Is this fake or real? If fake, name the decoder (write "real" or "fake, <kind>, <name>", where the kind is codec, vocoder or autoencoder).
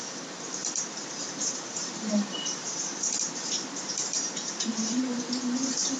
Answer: fake, vocoder, BigVGAN v2